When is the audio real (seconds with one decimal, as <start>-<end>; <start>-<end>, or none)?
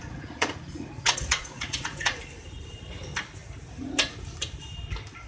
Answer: 2.1-5.3